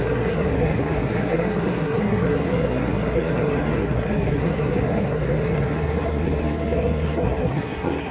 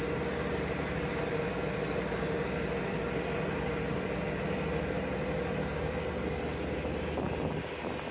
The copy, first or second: first